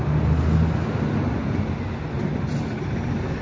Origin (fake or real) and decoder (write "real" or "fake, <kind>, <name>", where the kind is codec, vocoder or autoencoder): real